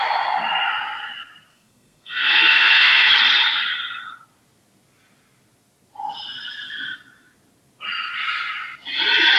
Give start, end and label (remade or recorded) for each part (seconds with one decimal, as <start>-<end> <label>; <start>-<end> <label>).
0.0-1.5 recorded; 1.5-3.1 remade; 3.1-9.4 recorded